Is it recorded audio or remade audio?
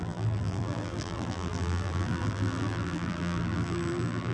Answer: remade